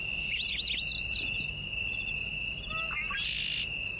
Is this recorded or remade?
recorded